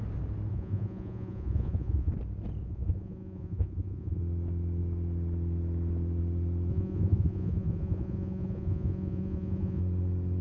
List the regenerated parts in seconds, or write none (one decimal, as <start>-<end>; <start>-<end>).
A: 0.5-2.1; 2.6-4.2; 6.7-9.8